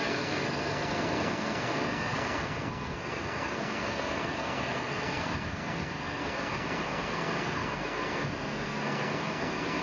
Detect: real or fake fake